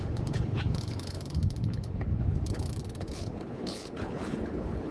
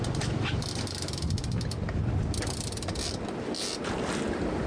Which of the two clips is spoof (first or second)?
first